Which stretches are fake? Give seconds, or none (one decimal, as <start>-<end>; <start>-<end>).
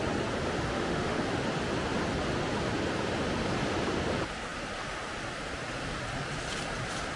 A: 0.7-1.2